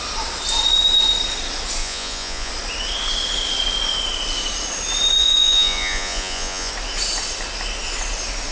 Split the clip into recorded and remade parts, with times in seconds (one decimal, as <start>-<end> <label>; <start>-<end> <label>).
0.0-1.8 recorded; 1.8-2.5 remade; 2.5-5.2 recorded; 5.2-6.7 remade; 6.7-8.5 recorded

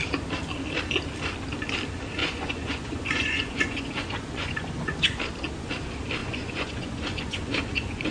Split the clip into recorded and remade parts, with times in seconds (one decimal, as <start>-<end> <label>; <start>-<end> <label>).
0.0-2.2 recorded; 2.2-5.2 remade; 5.2-6.2 recorded; 6.2-8.1 remade

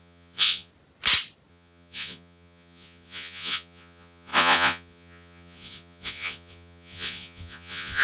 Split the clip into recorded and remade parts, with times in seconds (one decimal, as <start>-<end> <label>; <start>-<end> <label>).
0.0-0.7 remade; 0.7-1.5 recorded; 1.5-8.0 remade

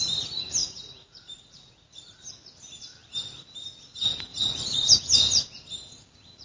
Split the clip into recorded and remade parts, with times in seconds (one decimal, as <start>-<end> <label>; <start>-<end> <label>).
0.0-0.6 recorded; 0.6-2.3 remade; 2.3-4.3 recorded; 4.3-4.9 remade; 4.9-6.4 recorded